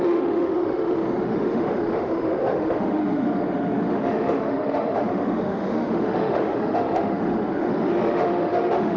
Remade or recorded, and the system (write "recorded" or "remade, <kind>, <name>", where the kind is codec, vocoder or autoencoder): remade, autoencoder, DAC-VAE